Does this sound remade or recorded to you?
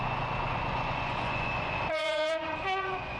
remade